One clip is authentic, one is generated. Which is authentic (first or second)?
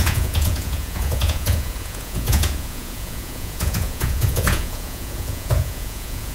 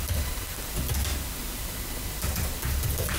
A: second